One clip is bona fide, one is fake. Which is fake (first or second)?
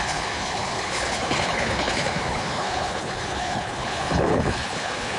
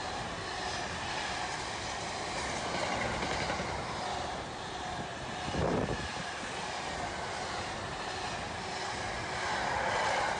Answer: first